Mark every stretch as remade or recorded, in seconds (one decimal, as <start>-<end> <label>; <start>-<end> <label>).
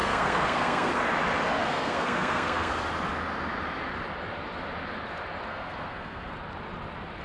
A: 0.0-1.0 remade; 1.0-1.6 recorded; 1.6-2.7 remade; 2.7-5.5 recorded; 5.5-6.3 remade; 6.3-7.2 recorded